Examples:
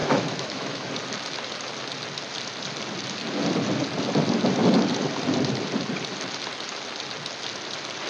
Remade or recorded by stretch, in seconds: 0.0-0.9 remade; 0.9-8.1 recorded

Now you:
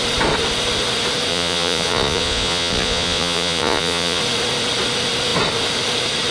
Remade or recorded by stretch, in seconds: 0.0-1.3 recorded; 1.3-4.2 remade; 4.2-6.3 recorded

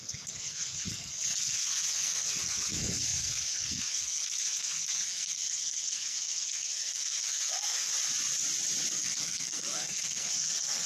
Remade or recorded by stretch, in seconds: 0.0-7.9 remade; 7.9-8.9 recorded; 8.9-10.9 remade

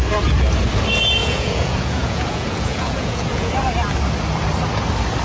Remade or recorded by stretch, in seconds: 0.0-1.2 recorded; 1.2-3.5 remade; 3.5-5.2 recorded

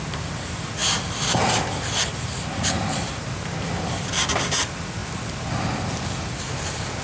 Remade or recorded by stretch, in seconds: 0.0-7.0 recorded

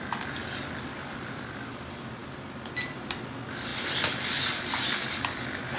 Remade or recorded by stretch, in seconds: 0.0-5.8 recorded

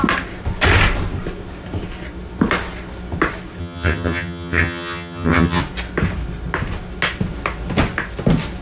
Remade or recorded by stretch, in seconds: 0.0-3.6 recorded; 3.6-5.6 remade; 5.6-8.6 recorded

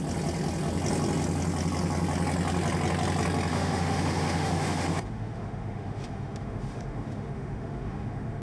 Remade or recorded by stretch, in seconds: 0.0-3.5 recorded; 3.5-8.4 remade